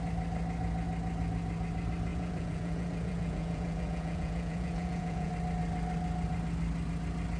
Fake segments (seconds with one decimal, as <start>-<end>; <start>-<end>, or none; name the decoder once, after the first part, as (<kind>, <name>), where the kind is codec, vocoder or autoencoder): 2.1-5.3 (vocoder, Vocos)